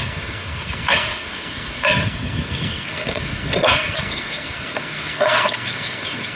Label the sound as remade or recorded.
remade